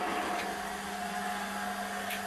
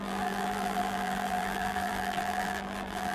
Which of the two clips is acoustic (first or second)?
first